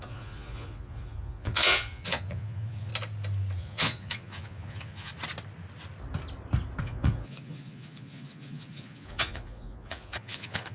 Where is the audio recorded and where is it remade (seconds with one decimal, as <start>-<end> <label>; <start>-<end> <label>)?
0.0-2.9 remade; 2.9-3.6 recorded; 3.6-5.1 remade; 5.1-6.8 recorded; 6.8-10.7 remade